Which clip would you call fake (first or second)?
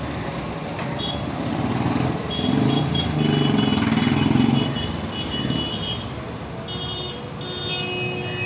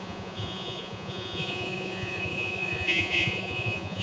second